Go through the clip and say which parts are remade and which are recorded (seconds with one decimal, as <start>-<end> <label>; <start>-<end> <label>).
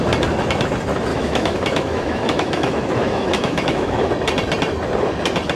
0.0-1.1 recorded; 1.1-4.1 remade; 4.1-5.6 recorded